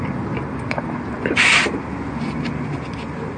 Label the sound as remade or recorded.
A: recorded